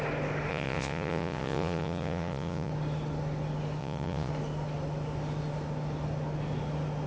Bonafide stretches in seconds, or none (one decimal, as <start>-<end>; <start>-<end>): 0.0-0.5; 2.7-3.8; 4.3-7.1